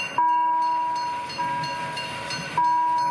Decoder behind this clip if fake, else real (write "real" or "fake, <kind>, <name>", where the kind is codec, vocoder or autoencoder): real